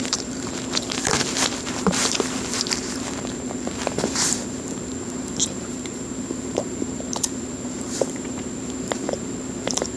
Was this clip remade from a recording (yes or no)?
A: yes